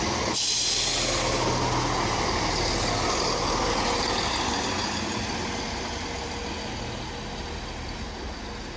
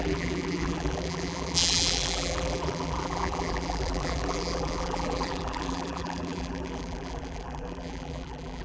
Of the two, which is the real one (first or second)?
first